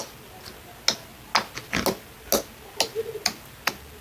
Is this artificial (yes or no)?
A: no